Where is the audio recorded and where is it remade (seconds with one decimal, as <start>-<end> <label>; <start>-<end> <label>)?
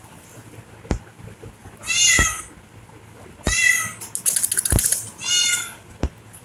0.0-6.4 recorded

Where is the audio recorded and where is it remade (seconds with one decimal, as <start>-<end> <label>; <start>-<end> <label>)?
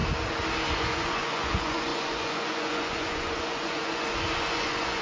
0.0-0.7 recorded; 0.7-5.0 remade